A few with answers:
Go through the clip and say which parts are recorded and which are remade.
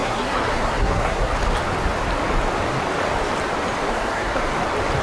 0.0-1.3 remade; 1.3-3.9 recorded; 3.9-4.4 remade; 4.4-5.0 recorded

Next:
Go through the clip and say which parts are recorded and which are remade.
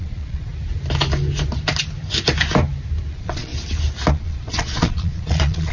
0.0-0.5 remade; 0.5-3.1 recorded; 3.1-3.5 remade; 3.5-4.1 recorded; 4.1-5.7 remade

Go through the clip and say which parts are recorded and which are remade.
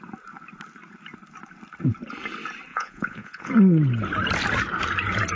0.0-2.7 recorded; 2.7-3.5 remade; 3.5-5.4 recorded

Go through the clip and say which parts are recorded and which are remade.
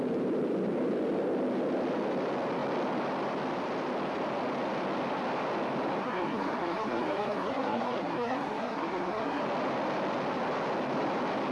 0.0-6.0 recorded; 6.0-9.4 remade; 9.4-11.5 recorded